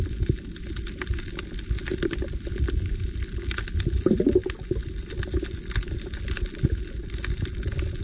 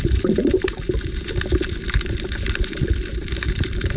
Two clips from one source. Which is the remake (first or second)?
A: second